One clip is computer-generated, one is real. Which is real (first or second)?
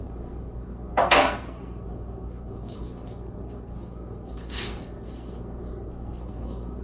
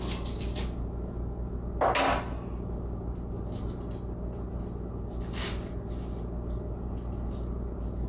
second